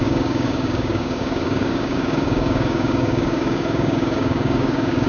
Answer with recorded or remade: remade